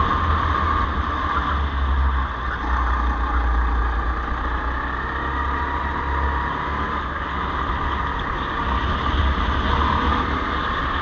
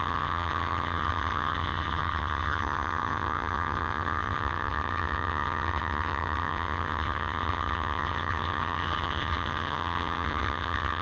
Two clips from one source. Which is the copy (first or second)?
second